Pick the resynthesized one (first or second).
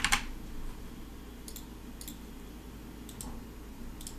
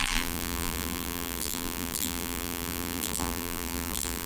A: second